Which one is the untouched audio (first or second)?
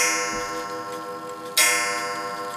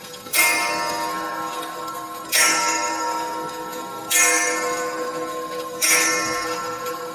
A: first